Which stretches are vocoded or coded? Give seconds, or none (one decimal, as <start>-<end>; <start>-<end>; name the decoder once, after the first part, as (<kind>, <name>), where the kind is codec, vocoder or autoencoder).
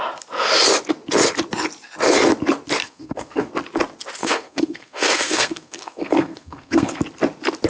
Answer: 2.8-3.5 (codec, SNAC); 4.2-7.0